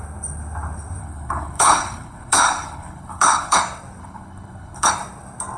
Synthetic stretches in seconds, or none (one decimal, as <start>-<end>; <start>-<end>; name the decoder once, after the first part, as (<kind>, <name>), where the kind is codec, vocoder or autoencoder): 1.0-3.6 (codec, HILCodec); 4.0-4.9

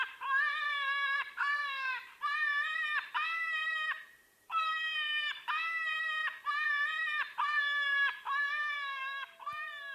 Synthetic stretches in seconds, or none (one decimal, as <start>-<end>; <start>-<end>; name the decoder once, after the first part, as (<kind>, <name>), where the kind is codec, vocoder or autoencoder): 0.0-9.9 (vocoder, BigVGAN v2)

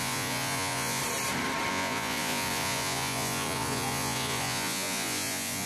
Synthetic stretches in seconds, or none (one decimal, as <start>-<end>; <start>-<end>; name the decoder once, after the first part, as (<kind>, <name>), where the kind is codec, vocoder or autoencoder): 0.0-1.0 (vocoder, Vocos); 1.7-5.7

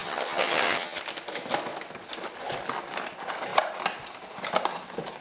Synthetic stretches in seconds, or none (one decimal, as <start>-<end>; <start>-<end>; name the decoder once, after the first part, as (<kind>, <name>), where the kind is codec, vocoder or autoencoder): 0.0-1.0 (vocoder, HiFi-GAN)

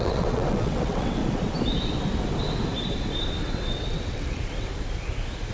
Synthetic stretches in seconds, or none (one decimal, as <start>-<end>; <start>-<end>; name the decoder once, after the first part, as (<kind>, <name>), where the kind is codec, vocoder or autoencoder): 0.0-1.2 (vocoder, WaveNeXt); 3.4-4.7

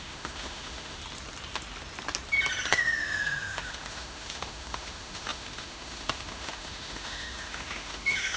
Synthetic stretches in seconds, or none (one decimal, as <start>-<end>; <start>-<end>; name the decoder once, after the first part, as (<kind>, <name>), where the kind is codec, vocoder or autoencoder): 0.0-1.0 (autoencoder, DAC-VAE); 2.7-8.4

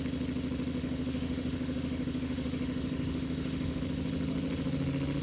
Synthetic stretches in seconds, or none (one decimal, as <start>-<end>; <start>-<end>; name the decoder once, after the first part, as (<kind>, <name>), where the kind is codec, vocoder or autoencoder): 0.8-3.8 (autoencoder, DAC-VAE)

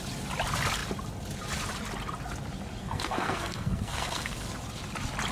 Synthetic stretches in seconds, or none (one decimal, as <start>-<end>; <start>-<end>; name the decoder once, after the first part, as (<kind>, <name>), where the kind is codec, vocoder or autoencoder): 2.8-4.5 (codec, SNAC)